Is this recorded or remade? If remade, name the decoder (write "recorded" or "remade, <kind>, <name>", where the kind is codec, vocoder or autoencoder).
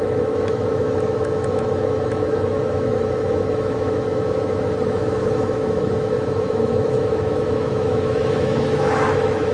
remade, autoencoder, DAC-VAE